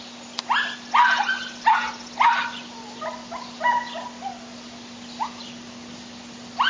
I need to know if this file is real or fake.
real